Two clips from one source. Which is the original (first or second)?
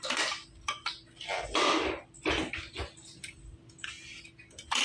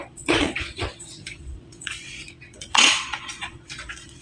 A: first